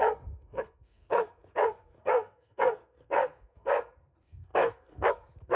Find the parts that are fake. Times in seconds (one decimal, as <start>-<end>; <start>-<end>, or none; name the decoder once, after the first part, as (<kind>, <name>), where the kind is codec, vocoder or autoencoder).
0.0-5.6 (codec, SNAC)